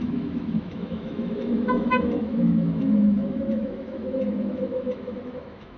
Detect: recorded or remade remade